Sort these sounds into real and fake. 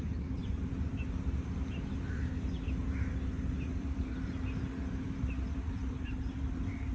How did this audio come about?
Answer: fake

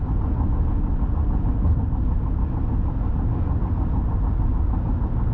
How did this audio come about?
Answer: real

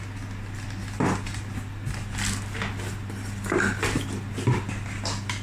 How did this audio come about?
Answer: real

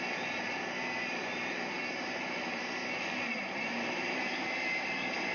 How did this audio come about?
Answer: fake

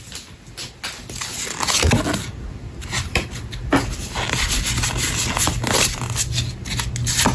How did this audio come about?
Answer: real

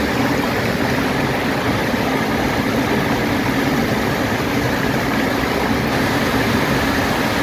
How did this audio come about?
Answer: real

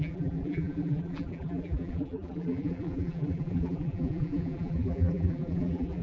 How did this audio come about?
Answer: fake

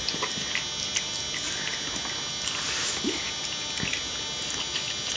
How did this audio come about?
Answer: real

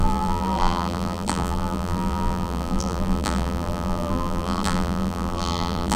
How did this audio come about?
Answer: fake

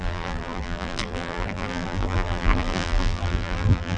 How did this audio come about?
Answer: fake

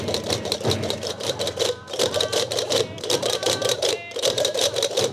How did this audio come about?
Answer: fake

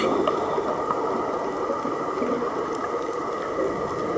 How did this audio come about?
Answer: real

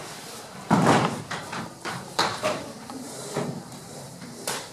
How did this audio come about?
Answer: fake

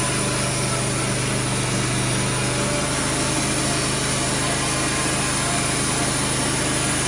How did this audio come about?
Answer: real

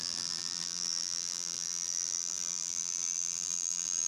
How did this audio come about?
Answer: fake